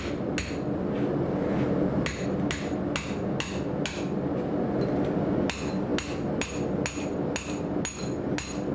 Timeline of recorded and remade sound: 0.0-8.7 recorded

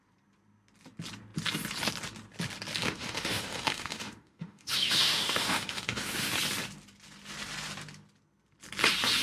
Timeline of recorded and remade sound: 0.0-2.8 recorded; 2.8-6.3 remade; 6.3-9.2 recorded

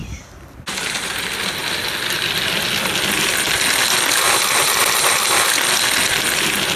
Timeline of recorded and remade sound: 0.0-6.8 recorded

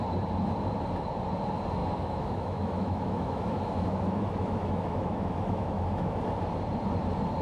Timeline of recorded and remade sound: 0.0-1.8 recorded; 1.8-6.2 remade; 6.2-7.4 recorded